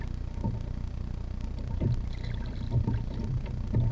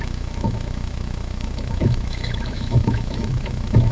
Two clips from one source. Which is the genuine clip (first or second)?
first